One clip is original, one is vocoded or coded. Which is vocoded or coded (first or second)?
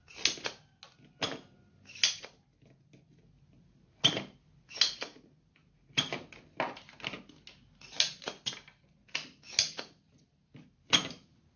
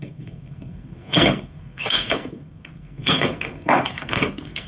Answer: second